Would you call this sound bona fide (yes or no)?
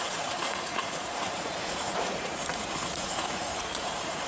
no